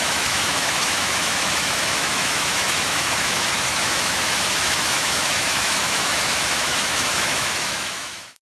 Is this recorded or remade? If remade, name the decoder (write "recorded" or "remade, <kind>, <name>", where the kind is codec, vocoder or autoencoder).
remade, autoencoder, DAC-VAE